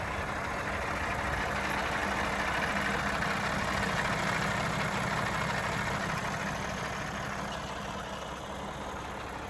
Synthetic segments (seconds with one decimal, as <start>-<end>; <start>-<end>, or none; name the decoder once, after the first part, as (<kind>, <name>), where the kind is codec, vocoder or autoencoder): none